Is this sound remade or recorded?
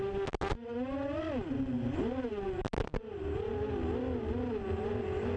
recorded